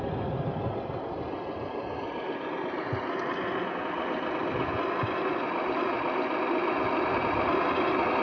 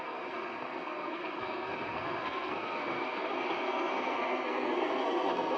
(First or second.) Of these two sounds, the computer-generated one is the second